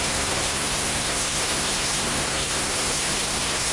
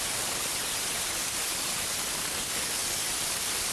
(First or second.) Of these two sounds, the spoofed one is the first